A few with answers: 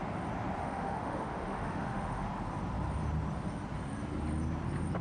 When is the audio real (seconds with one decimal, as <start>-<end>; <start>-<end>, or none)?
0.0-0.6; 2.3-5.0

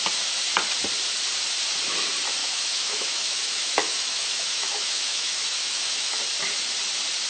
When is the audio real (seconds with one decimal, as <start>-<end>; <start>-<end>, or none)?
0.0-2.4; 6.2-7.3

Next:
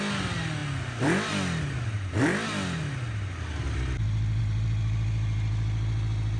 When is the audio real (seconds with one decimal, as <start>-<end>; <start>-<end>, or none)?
0.0-6.4

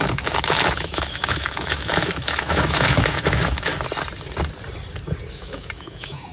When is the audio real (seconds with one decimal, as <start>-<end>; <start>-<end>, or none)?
3.7-5.3